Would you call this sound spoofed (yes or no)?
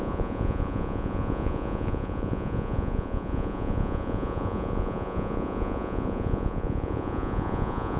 yes